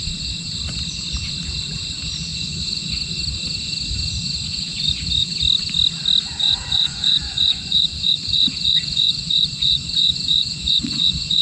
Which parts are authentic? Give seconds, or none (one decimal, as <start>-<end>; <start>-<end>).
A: 0.0-2.3; 2.9-4.5; 5.3-6.4

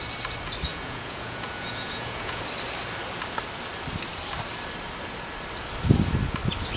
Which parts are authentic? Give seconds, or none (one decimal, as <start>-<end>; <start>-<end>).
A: 0.0-0.7; 2.4-6.8

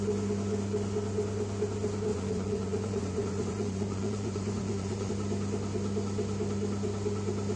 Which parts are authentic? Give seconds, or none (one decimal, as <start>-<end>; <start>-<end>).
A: 0.0-2.1; 5.1-7.6